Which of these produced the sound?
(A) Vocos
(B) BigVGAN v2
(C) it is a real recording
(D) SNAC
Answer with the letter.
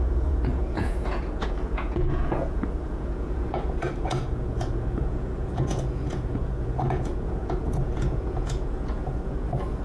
A